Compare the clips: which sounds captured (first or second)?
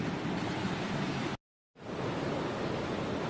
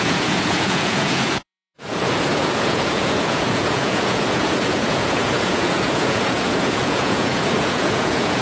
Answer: first